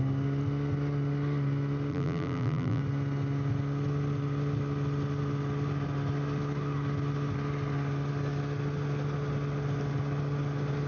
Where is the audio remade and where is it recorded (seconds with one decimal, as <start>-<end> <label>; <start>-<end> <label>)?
0.0-1.9 recorded; 1.9-2.8 remade; 2.8-10.9 recorded